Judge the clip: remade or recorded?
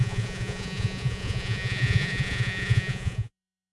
remade